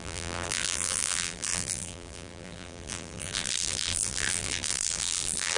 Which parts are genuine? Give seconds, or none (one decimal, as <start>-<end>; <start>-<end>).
none